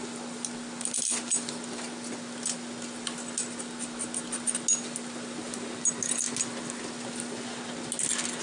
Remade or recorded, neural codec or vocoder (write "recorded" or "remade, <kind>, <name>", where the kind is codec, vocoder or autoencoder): recorded